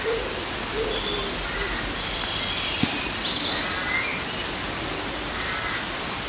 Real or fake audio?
real